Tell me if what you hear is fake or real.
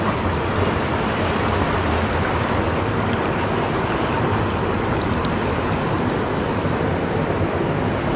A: real